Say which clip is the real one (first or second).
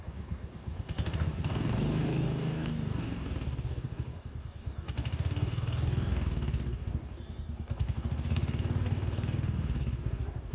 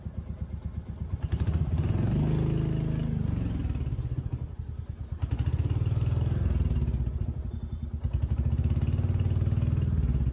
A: second